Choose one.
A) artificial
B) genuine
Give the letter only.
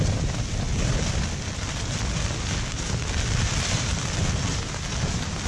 B